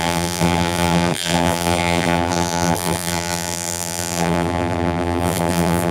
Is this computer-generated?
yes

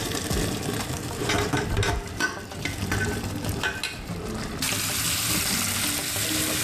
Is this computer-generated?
yes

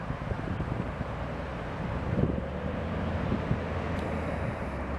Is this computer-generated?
yes